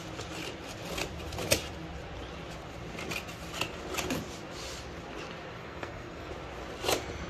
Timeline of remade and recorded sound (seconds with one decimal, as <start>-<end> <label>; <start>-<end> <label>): 0.0-5.6 recorded; 5.6-6.3 remade; 6.3-7.3 recorded